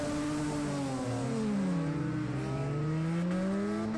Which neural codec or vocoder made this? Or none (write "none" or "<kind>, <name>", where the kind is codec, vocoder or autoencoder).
none